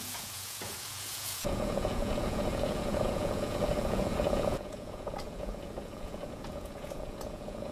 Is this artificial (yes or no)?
yes